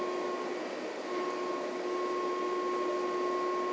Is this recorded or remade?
recorded